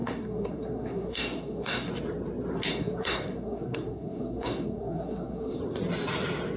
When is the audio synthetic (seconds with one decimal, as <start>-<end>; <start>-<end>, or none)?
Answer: 0.0-1.9; 2.7-5.6